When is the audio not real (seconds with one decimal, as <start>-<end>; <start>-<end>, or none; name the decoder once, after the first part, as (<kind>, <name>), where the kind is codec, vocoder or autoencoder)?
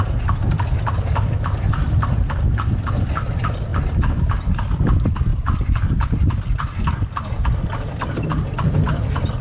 none